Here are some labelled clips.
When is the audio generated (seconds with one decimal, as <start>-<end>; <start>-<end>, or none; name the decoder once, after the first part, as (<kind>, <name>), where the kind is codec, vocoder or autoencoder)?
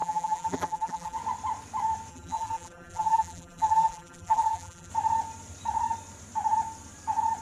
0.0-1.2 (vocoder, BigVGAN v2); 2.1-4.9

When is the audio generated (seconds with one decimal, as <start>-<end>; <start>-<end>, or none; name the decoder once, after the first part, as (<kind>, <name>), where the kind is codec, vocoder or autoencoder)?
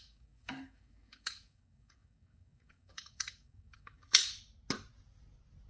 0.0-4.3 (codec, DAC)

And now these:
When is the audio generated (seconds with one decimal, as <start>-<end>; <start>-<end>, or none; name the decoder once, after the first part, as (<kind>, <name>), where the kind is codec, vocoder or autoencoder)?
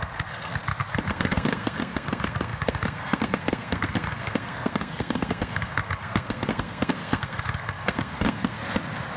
0.0-0.5 (codec, SNAC); 1.1-8.6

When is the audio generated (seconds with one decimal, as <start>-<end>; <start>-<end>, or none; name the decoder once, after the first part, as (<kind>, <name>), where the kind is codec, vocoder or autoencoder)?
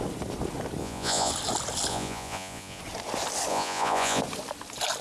0.8-1.3 (vocoder, Vocos); 1.9-2.8; 3.5-4.2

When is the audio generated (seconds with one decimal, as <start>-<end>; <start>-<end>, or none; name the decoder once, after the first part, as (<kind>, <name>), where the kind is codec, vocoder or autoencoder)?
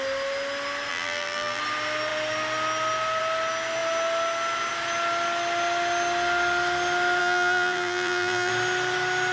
0.9-1.6 (vocoder, BigVGAN v2); 7.2-8.5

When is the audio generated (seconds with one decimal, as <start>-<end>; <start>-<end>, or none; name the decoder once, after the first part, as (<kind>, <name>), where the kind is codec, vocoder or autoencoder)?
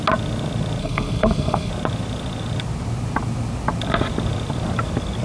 0.8-1.7 (codec, SNAC)